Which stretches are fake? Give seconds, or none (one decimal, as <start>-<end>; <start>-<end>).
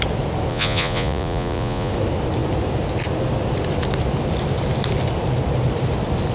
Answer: 0.5-1.9